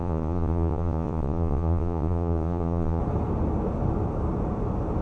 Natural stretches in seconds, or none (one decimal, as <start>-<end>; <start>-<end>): 3.0-5.0